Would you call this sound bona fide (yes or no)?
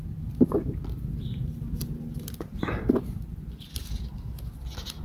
yes